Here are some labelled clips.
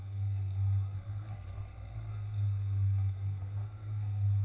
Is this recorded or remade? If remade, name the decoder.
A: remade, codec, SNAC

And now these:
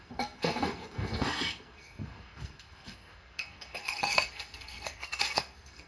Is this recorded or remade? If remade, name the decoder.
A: remade, codec, SNAC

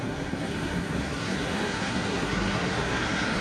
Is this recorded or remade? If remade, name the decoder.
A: remade, codec, SNAC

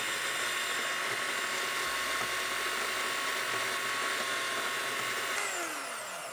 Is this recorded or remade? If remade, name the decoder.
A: recorded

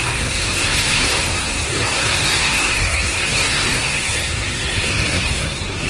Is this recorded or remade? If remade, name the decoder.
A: remade, codec, SNAC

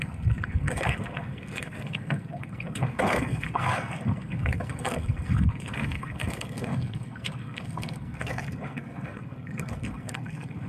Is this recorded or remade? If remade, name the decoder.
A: remade, codec, SNAC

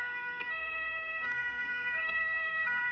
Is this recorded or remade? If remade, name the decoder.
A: remade, codec, SNAC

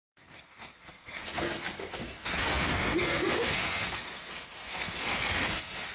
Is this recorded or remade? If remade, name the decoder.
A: remade, codec, SNAC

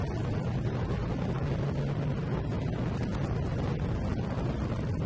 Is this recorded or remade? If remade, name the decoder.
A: recorded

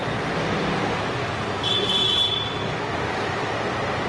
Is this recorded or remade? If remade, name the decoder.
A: recorded